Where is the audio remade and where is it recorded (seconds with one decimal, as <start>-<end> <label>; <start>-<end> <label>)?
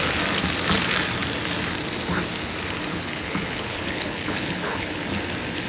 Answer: 0.0-2.9 recorded; 2.9-5.0 remade; 5.0-5.7 recorded